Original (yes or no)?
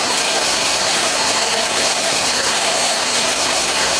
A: no